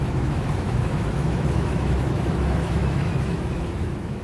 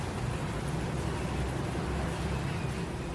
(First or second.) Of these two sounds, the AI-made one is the first